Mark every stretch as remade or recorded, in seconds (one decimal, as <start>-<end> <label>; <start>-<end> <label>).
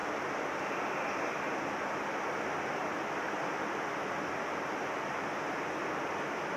0.0-6.6 recorded